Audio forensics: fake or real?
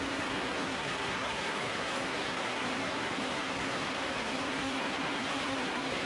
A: fake